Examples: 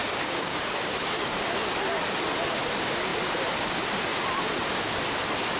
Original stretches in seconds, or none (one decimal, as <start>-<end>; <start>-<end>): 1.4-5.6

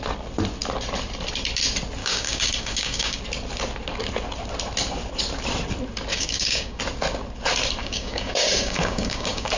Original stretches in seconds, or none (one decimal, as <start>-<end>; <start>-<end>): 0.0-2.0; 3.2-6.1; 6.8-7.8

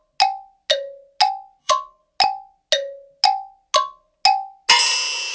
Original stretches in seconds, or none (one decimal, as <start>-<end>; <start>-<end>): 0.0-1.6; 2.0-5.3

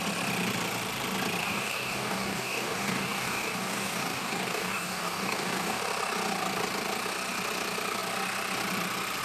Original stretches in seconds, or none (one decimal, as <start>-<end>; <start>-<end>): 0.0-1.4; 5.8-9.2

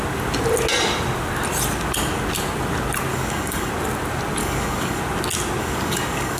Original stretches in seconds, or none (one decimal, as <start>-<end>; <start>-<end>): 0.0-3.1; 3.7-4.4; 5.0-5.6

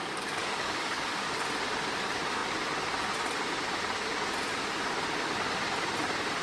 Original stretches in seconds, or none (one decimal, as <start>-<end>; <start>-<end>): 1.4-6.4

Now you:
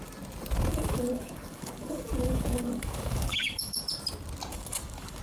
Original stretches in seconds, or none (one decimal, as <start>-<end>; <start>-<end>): 0.0-0.7; 3.8-4.5

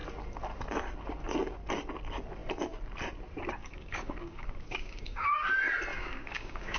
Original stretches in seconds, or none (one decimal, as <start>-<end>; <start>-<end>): 0.0-3.6; 5.3-5.9